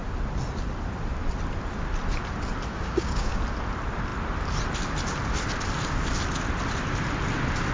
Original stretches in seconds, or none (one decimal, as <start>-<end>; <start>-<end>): 0.0-2.7; 3.4-7.7